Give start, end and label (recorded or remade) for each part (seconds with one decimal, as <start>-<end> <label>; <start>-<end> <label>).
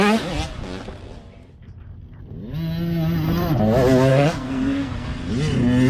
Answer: 0.0-4.1 recorded; 4.1-5.3 remade; 5.3-5.9 recorded